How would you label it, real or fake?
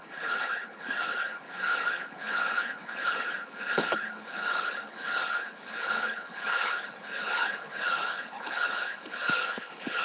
fake